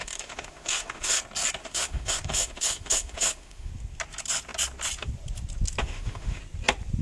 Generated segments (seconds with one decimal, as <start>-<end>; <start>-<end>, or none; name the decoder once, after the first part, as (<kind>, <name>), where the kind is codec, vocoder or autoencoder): 0.0-1.2 (autoencoder, DAC-VAE); 1.6-3.7; 5.8-6.4